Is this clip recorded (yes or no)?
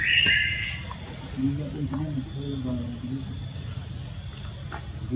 yes